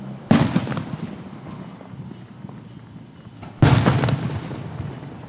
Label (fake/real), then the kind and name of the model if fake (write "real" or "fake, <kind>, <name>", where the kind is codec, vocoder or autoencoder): real